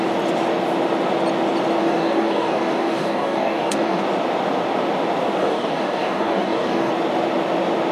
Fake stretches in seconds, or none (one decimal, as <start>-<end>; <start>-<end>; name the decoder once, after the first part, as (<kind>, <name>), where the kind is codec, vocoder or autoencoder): 1.8-4.0 (codec, DAC); 5.4-6.9